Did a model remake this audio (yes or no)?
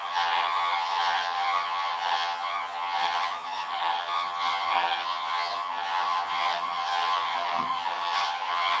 yes